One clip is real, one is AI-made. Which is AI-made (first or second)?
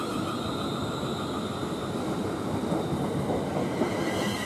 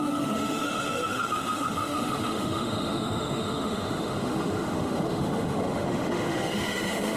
second